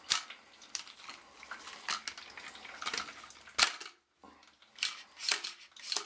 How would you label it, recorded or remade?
recorded